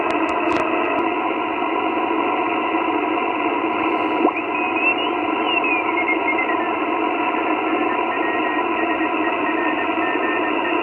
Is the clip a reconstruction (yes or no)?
no